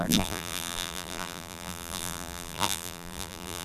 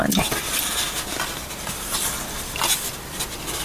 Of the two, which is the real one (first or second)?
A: second